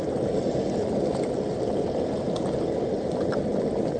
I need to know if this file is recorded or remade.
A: recorded